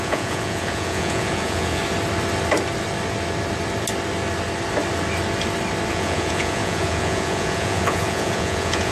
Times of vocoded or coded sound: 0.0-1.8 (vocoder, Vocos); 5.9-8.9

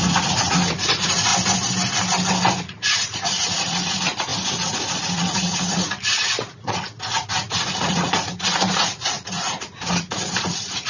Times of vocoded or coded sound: 0.0-1.3 (vocoder, Vocos); 2.6-10.9